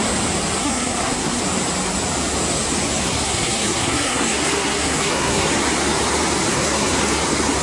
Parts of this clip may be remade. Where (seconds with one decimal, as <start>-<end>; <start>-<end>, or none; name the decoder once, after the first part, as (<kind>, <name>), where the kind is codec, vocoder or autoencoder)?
0.6-1.4 (codec, SNAC); 3.0-5.5; 6.5-7.1